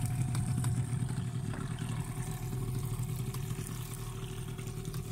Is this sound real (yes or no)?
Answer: yes